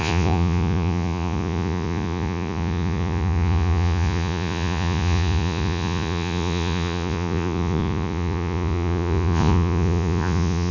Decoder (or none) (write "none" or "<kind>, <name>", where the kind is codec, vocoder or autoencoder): vocoder, Vocos